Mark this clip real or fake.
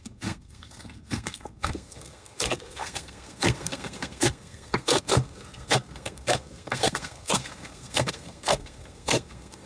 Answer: fake